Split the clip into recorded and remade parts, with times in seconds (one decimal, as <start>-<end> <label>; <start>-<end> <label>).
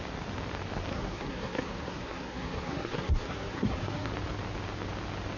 0.0-0.9 recorded; 0.9-4.1 remade; 4.1-5.4 recorded